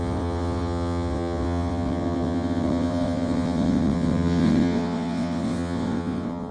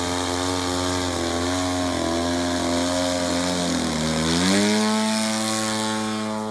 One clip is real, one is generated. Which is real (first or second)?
second